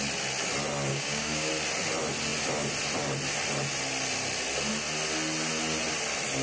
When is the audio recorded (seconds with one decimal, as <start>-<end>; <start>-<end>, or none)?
0.0-0.9; 1.5-6.4